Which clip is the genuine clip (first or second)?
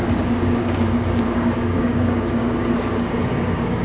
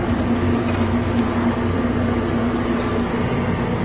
second